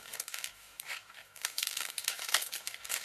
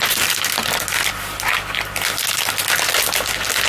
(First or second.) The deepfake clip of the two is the first